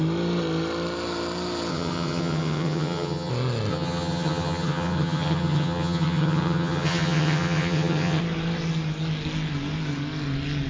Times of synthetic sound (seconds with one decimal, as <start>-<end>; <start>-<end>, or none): 1.7-3.3; 3.7-8.2